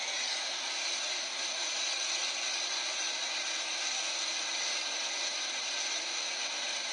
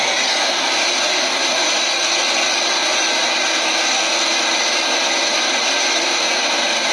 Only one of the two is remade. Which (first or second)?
first